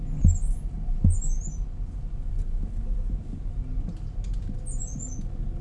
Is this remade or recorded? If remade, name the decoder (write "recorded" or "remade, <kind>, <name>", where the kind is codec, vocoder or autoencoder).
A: recorded